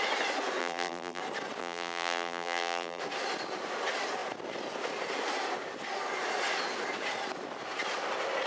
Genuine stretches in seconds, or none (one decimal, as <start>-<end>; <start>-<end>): 0.0-0.6; 1.2-1.6; 3.0-8.5